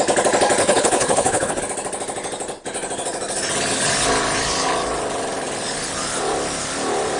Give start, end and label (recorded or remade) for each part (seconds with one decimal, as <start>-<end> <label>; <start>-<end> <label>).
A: 0.0-0.6 recorded; 0.6-1.6 remade; 1.6-7.2 recorded